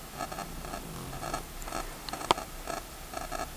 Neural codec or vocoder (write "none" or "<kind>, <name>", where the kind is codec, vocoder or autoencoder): none